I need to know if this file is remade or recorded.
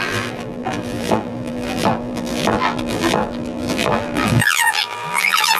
remade